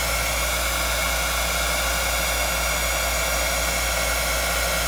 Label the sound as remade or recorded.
recorded